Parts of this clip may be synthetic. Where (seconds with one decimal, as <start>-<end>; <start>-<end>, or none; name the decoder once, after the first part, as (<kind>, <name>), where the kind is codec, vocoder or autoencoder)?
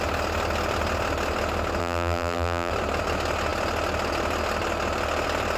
1.8-2.7 (vocoder, BigVGAN v2)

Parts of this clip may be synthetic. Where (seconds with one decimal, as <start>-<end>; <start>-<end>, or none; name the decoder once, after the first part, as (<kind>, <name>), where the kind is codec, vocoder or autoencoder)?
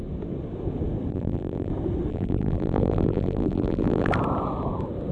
1.1-1.7 (vocoder, BigVGAN v2); 2.1-4.1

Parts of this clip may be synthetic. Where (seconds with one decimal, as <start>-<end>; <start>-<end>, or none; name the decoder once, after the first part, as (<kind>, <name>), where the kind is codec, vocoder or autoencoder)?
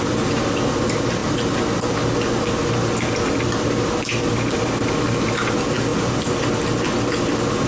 5.9-6.4 (vocoder, BigVGAN v2)